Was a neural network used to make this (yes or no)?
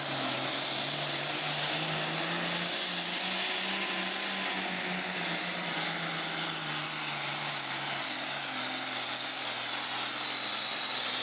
no